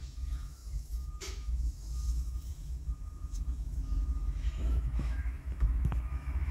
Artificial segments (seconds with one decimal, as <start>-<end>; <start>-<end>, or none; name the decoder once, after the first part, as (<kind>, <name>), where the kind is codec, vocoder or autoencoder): 0.0-6.5 (autoencoder, DAC-VAE)

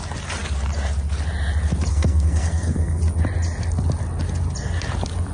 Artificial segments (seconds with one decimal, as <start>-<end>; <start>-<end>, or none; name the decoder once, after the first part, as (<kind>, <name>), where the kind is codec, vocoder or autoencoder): 1.9-3.0 (codec, SNAC)

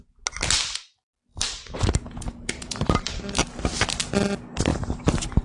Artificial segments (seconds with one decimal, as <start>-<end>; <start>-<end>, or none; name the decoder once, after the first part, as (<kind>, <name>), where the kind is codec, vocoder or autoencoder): 1.3-3.2 (vocoder, BigVGAN v2); 4.7-5.4

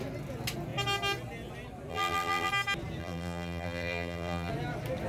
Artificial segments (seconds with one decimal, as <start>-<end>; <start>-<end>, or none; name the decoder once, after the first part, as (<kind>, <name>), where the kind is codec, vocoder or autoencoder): 1.9-2.5 (vocoder, BigVGAN v2); 3.0-4.5

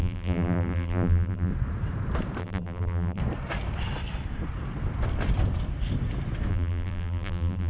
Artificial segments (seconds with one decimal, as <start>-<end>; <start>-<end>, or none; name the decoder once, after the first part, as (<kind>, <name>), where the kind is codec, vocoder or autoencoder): 0.0-1.5 (vocoder, BigVGAN v2); 2.4-3.2; 6.5-7.7

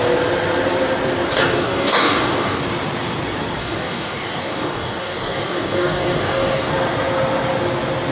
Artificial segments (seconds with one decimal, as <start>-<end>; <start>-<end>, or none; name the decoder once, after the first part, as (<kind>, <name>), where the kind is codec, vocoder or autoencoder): 1.4-2.6 (codec, DAC); 3.6-6.7